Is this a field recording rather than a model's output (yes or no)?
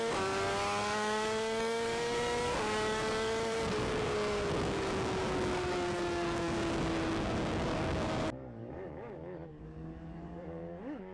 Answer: no